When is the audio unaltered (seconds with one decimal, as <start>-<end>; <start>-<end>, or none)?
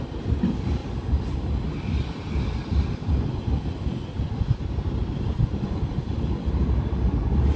0.0-7.6